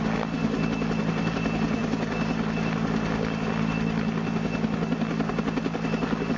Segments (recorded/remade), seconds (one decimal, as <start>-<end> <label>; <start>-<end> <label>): 0.0-6.4 recorded